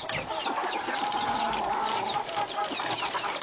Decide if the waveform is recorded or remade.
recorded